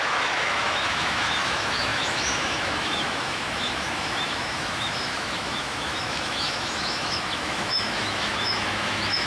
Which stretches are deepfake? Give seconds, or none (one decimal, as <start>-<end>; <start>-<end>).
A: 0.0-9.3